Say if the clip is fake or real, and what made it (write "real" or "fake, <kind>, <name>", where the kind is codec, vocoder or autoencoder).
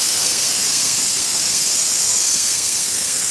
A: fake, codec, SNAC